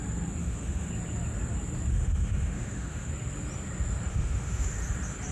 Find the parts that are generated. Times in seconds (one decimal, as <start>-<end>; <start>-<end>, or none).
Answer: 0.4-0.9; 1.9-3.1; 4.1-4.8